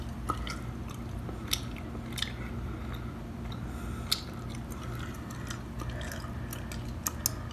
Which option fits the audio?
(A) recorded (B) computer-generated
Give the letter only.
A